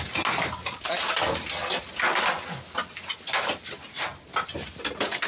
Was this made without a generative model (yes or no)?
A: yes